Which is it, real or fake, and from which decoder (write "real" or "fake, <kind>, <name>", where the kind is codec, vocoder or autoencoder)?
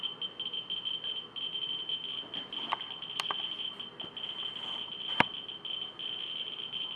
real